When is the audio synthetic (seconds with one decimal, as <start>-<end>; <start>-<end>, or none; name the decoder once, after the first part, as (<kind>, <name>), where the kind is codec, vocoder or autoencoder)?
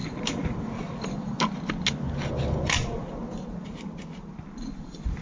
none